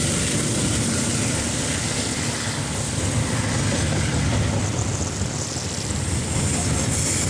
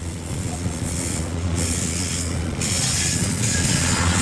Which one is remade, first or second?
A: second